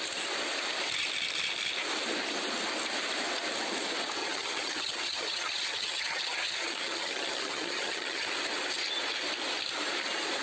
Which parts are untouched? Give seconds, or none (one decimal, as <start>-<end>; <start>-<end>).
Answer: 0.0-4.2; 8.3-10.4

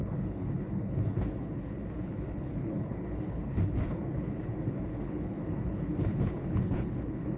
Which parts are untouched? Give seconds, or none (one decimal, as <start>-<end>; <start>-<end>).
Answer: none